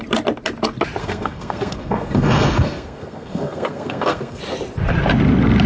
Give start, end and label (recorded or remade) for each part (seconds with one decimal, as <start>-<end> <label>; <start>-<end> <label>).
0.0-1.0 recorded; 1.0-4.4 remade; 4.4-5.7 recorded